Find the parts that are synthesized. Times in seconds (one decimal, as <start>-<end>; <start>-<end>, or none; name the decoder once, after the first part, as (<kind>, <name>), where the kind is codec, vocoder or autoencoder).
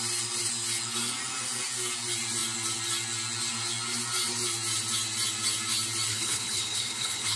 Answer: 6.1-7.4 (codec, HILCodec)